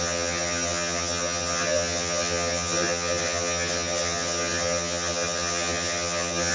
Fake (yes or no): yes